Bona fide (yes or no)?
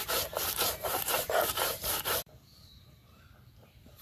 no